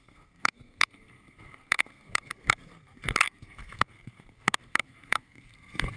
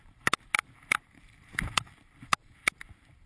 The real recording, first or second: second